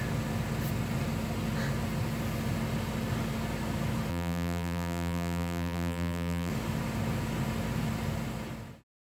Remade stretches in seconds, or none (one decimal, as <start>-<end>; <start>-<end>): 4.1-6.5